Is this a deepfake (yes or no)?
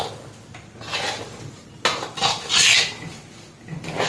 no